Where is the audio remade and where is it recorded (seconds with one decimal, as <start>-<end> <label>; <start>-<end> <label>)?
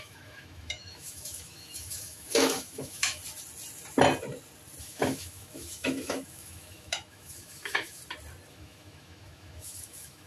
0.0-3.2 remade; 3.2-4.8 recorded; 4.8-8.0 remade; 8.0-8.5 recorded; 8.5-10.3 remade